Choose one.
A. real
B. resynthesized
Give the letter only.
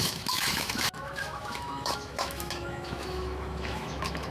B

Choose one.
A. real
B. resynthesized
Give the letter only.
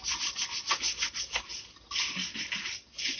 A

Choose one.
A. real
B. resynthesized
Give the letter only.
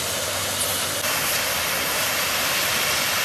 A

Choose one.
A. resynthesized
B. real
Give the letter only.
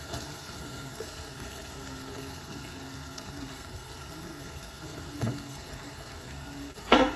A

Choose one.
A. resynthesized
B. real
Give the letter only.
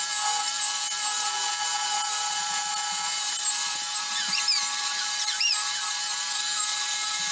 B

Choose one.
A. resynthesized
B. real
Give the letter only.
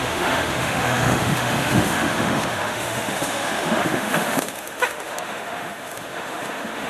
A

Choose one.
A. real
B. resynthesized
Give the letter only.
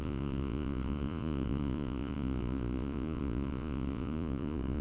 B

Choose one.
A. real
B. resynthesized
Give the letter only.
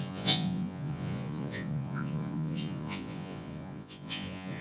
B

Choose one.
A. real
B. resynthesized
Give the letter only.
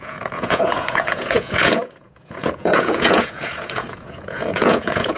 B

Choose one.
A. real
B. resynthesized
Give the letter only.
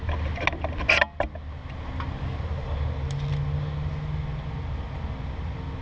A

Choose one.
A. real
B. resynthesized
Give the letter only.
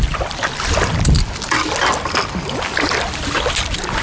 A